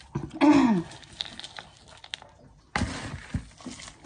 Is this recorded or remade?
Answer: recorded